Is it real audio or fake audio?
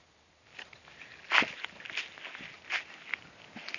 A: real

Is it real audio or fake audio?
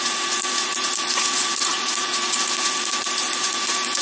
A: fake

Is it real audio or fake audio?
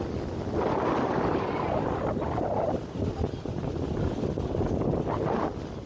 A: real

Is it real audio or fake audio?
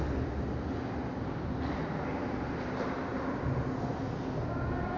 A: real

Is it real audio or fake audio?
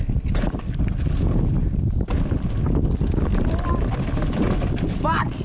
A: real